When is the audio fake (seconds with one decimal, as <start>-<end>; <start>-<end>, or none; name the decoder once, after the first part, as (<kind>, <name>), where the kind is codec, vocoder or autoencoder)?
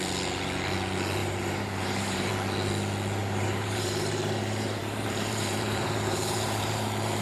1.2-2.3 (vocoder, BigVGAN v2); 3.2-7.2